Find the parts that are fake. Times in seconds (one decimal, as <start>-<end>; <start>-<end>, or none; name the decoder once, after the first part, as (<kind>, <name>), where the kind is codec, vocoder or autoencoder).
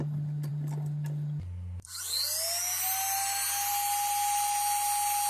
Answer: none